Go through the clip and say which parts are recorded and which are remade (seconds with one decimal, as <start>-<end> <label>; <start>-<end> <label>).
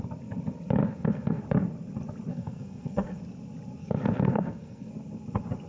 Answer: 0.0-0.8 recorded; 0.8-1.4 remade; 1.4-2.3 recorded; 2.3-3.2 remade; 3.2-3.8 recorded; 3.8-4.9 remade; 4.9-5.7 recorded